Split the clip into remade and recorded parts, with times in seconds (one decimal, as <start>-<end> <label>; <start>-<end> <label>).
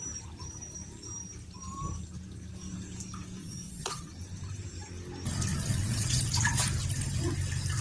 0.0-3.4 recorded; 3.4-4.1 remade; 4.1-5.5 recorded; 5.5-6.2 remade; 6.2-7.8 recorded